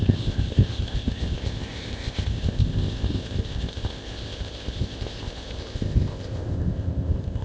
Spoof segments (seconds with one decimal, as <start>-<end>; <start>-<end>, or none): 0.0-7.4